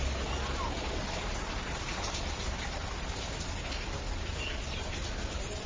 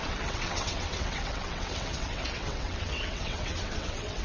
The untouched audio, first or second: first